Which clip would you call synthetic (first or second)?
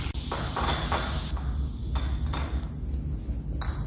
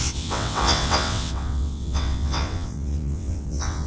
second